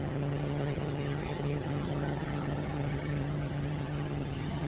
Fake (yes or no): yes